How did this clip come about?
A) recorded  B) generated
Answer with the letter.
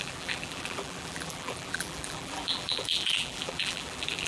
B